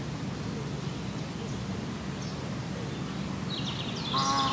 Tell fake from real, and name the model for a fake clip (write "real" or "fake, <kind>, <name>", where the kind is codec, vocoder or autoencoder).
real